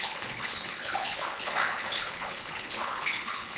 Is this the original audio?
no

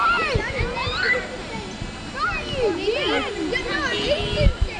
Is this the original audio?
yes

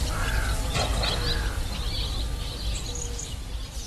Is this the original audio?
yes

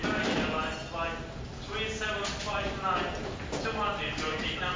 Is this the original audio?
yes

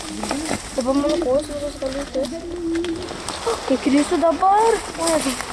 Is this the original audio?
yes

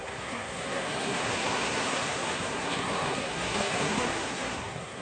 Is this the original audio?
no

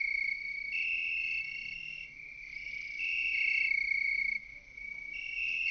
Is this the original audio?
yes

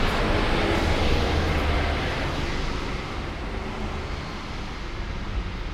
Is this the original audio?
yes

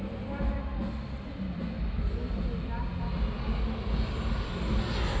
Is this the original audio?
yes